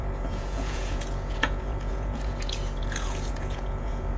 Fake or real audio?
fake